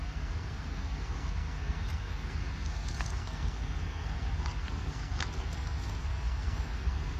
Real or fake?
fake